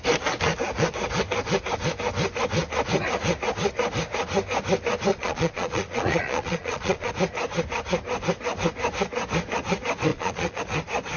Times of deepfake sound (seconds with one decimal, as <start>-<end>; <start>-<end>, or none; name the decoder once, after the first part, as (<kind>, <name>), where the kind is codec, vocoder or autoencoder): 5.1-7.1 (vocoder, Vocos); 10.1-10.6